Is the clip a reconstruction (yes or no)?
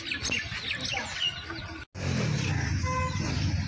no